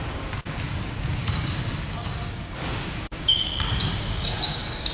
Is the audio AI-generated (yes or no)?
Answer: yes